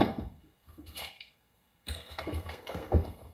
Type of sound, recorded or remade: remade